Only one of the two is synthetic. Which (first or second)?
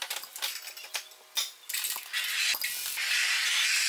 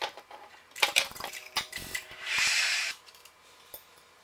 second